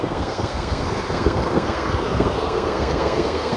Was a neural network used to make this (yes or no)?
yes